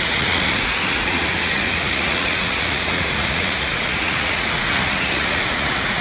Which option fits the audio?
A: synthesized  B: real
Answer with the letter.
A